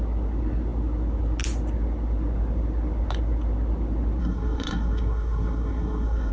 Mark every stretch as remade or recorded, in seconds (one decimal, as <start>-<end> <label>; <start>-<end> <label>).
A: 0.0-4.2 recorded; 4.2-6.3 remade